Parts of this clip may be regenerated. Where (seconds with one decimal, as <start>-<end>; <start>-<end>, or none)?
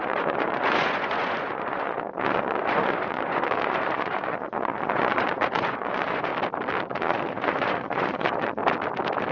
0.0-6.3; 6.9-8.6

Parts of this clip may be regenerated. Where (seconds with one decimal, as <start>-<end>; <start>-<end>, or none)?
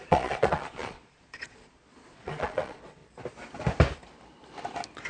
0.0-3.0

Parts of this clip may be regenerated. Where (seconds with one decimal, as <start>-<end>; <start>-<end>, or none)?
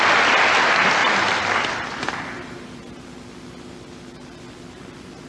none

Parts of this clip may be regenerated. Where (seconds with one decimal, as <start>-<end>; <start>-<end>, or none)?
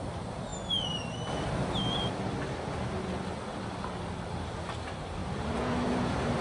0.0-0.5; 4.3-6.4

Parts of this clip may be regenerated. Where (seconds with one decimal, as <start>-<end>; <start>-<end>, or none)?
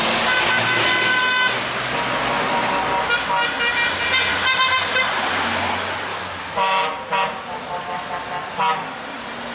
6.1-6.8